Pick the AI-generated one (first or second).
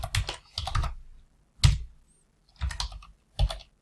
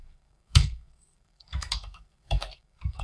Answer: second